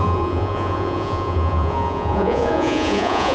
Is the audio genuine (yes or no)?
no